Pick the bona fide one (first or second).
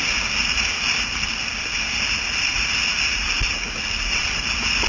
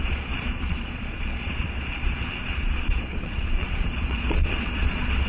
first